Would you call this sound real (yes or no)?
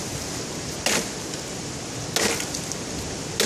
yes